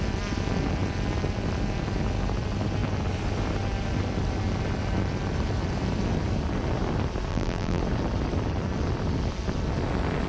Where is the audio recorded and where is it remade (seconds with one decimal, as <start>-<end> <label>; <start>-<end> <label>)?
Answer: 0.0-7.3 recorded; 7.3-7.8 remade; 7.8-10.3 recorded